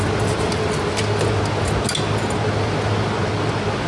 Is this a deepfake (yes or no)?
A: no